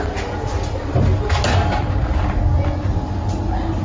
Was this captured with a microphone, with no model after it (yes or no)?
yes